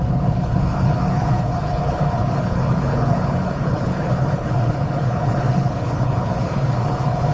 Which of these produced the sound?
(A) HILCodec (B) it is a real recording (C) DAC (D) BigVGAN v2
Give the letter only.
A